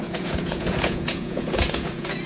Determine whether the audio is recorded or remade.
remade